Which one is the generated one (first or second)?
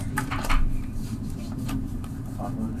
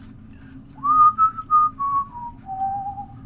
first